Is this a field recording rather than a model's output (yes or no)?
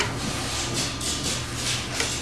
yes